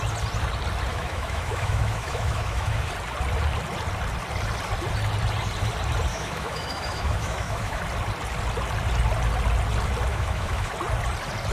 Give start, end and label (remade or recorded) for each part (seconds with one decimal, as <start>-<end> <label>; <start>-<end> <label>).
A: 0.0-0.9 recorded; 0.9-2.9 remade; 2.9-6.1 recorded; 6.1-7.8 remade; 7.8-10.1 recorded; 10.1-10.7 remade; 10.7-11.5 recorded